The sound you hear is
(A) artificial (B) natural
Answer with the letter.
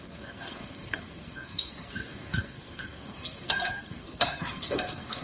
A